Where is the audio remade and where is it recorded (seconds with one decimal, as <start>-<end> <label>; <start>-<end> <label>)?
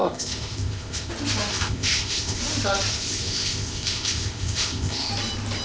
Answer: 0.0-1.1 remade; 1.1-1.5 recorded; 1.5-2.4 remade; 2.4-2.9 recorded; 2.9-5.1 remade; 5.1-5.6 recorded